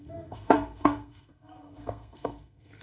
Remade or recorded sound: remade